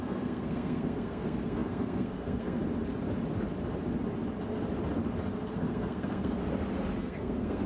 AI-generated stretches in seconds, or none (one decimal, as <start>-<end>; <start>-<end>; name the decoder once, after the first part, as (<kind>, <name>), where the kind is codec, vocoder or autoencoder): 0.0-2.6 (codec, SNAC); 5.5-6.4; 7.0-7.7